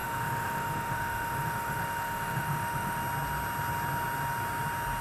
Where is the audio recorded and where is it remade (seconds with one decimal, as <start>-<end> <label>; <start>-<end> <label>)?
0.0-3.0 remade; 3.0-5.0 recorded